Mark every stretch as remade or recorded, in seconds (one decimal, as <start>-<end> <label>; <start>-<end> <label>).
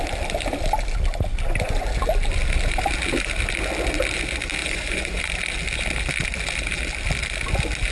0.0-4.6 recorded; 4.6-5.2 remade; 5.2-7.9 recorded